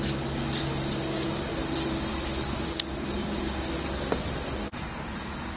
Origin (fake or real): real